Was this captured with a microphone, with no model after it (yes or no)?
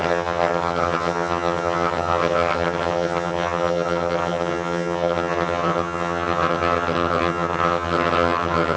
no